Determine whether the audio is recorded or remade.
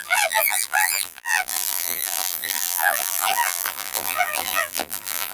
remade